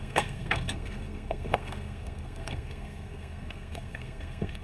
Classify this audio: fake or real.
fake